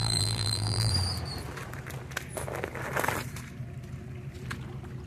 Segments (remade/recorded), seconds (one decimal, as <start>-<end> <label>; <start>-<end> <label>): 0.0-0.9 remade; 0.9-5.1 recorded